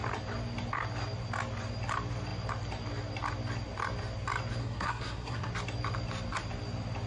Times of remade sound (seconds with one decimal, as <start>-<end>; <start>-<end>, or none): 4.6-5.5